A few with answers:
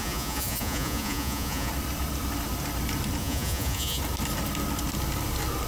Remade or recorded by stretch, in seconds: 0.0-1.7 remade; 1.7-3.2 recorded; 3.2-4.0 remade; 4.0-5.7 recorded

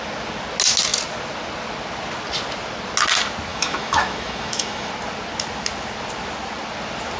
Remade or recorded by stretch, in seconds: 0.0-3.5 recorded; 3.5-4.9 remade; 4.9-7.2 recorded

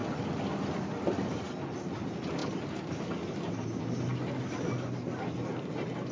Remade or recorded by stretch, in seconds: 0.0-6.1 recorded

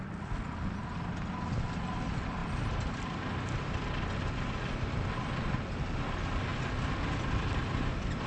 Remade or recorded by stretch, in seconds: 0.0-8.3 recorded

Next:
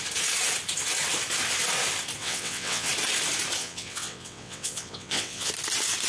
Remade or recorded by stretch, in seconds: 0.0-2.2 recorded; 2.2-2.9 remade; 2.9-3.6 recorded; 3.6-5.5 remade; 5.5-6.1 recorded

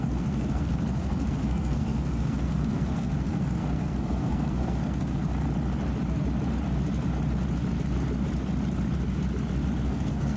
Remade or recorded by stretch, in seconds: 0.0-5.3 remade; 5.3-9.9 recorded; 9.9-10.4 remade

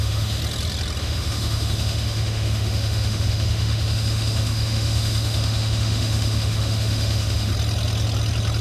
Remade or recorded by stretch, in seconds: 0.0-0.4 remade; 0.4-1.0 recorded; 1.0-7.5 remade; 7.5-8.6 recorded

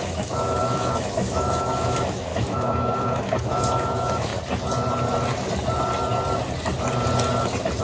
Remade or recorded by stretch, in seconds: 0.0-4.3 remade; 4.3-7.8 recorded